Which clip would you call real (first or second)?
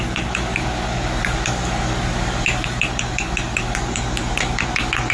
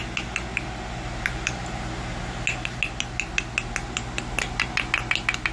second